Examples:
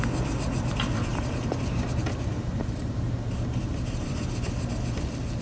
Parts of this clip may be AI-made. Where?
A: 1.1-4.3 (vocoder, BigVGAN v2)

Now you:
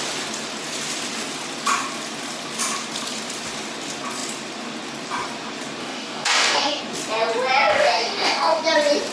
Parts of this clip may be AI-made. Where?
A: 5.8-6.8 (codec, DAC); 7.7-8.6

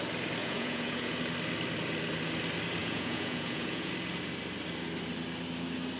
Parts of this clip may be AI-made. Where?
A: 0.4-1.2 (vocoder, Vocos); 2.8-3.9

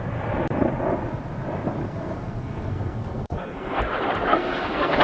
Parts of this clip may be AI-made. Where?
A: 1.8-3.8 (codec, SNAC); 4.3-5.0